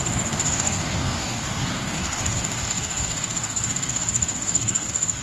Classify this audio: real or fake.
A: fake